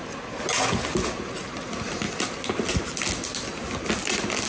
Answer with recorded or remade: recorded